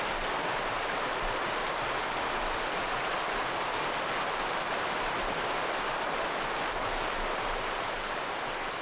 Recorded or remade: recorded